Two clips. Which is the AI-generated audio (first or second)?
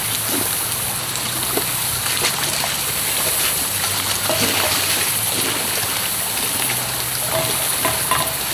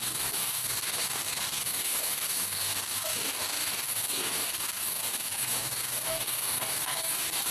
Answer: second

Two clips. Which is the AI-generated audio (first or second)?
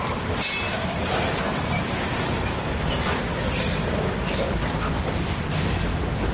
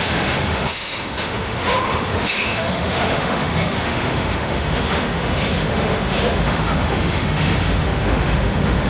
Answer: second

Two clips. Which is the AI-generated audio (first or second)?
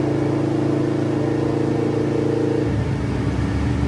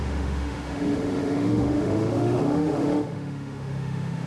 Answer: second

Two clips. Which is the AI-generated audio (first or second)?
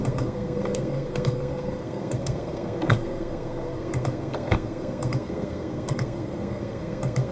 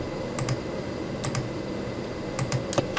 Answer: first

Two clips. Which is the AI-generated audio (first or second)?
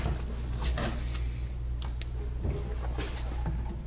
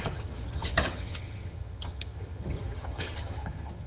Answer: second